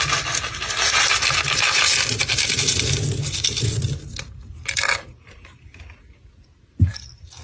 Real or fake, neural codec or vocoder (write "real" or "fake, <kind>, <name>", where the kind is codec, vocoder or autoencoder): real